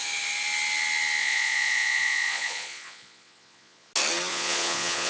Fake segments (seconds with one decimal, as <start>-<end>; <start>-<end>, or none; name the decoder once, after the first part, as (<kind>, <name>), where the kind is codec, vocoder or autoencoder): 1.2-3.9 (vocoder, Vocos); 4.3-5.1